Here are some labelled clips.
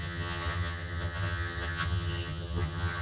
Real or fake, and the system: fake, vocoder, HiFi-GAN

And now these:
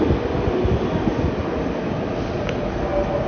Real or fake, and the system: real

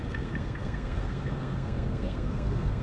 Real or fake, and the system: fake, codec, SNAC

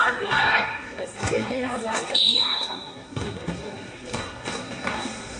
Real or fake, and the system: fake, codec, SNAC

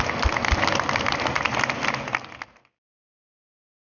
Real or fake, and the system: real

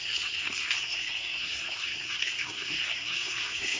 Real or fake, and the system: fake, codec, SNAC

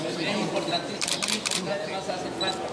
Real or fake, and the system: real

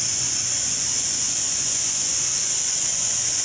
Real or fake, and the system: fake, vocoder, Vocos